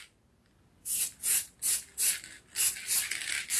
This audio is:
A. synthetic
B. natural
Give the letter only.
B